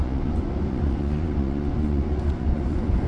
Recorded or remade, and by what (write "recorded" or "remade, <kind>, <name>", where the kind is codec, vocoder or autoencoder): remade, vocoder, Vocos